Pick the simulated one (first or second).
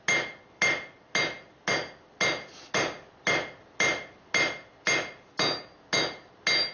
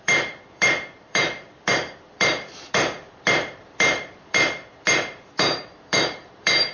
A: second